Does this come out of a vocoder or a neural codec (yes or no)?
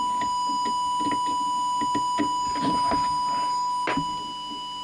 no